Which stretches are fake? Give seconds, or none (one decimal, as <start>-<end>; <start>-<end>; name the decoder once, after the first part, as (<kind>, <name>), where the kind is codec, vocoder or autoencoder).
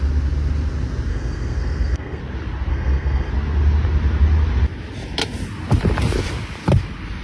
1.1-2.2 (codec, SNAC); 2.7-3.3